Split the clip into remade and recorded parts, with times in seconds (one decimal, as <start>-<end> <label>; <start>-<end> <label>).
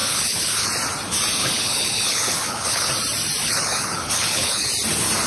0.0-0.7 remade; 0.7-1.4 recorded; 1.4-2.9 remade; 2.9-3.4 recorded; 3.4-4.7 remade; 4.7-5.3 recorded